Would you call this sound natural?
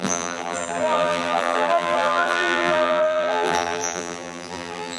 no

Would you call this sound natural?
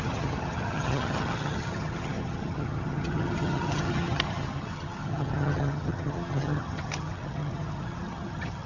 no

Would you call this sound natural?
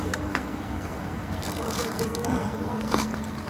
no